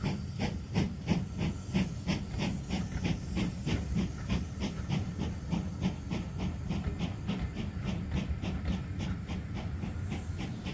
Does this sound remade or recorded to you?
recorded